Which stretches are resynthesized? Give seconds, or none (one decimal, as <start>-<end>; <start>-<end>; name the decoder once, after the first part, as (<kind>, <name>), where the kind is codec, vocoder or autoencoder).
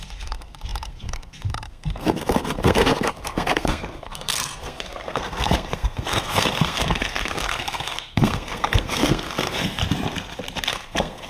0.0-9.8 (codec, SNAC); 10.7-11.3